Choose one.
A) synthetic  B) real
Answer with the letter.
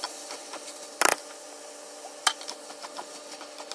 B